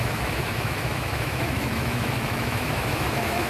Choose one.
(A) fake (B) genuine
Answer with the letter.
A